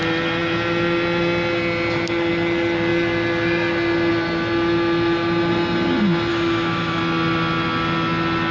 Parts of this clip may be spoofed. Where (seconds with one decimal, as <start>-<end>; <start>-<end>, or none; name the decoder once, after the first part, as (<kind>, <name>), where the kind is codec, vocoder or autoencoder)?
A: 6.3-7.0 (autoencoder, DAC-VAE)